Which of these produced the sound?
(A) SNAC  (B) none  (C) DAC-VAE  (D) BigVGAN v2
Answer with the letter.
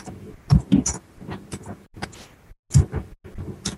B